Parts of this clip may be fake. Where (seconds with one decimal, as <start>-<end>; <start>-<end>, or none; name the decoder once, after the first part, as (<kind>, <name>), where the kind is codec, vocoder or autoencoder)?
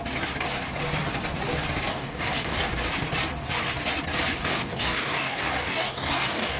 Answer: 1.9-2.7 (codec, DAC); 4.4-6.6